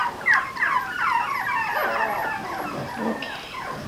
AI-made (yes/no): no